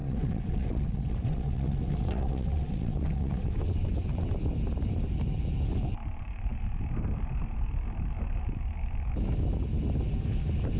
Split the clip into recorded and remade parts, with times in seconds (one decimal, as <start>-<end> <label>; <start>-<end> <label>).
0.0-4.3 remade; 4.3-10.8 recorded